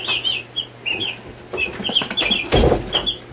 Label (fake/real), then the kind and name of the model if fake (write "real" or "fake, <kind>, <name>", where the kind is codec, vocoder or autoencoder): real